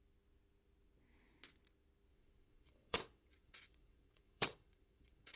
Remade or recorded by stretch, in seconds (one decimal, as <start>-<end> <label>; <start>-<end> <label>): 0.0-2.1 recorded; 2.1-5.4 remade